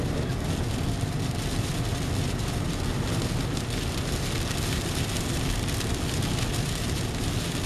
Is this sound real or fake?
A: real